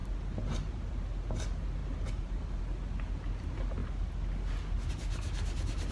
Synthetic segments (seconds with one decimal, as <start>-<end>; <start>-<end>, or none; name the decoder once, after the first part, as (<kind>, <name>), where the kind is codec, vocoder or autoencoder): none